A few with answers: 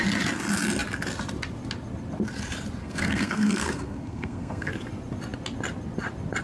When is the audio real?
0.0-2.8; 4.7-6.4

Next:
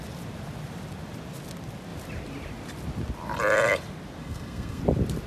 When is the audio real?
0.0-4.2; 4.8-5.3

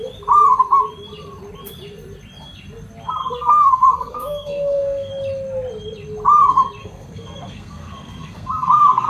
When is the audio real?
0.0-3.2; 5.1-6.8